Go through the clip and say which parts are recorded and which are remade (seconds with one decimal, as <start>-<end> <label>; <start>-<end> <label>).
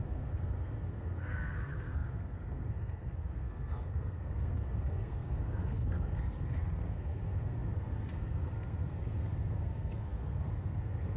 0.0-11.2 remade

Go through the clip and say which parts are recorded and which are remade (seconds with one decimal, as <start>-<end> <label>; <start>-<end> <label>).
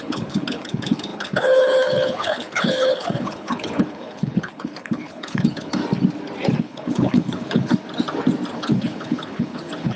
0.0-5.8 remade; 5.8-6.6 recorded; 6.6-7.7 remade; 7.7-8.5 recorded; 8.5-10.0 remade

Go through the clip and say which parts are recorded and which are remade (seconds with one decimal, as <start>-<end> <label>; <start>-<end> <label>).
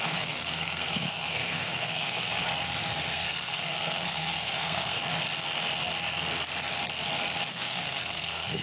0.0-2.5 remade; 2.5-3.1 recorded; 3.1-5.0 remade; 5.0-7.5 recorded; 7.5-8.6 remade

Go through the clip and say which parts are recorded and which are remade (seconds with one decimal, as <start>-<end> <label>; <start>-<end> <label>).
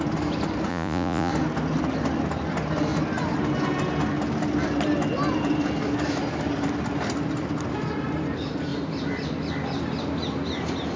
0.0-0.7 recorded; 0.7-1.3 remade; 1.3-11.0 recorded